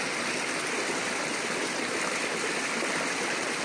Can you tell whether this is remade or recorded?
recorded